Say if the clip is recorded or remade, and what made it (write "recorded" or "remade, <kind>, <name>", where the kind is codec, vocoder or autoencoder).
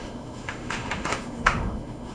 remade, autoencoder, DAC-VAE